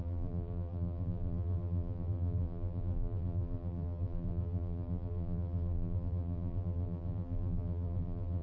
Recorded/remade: remade